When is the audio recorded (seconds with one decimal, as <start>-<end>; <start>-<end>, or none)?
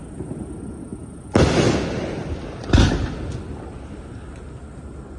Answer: 0.0-5.2